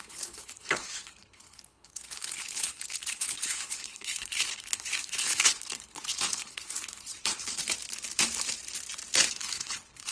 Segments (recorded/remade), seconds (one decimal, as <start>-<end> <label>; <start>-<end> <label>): 0.0-7.6 remade; 7.6-9.3 recorded; 9.3-10.1 remade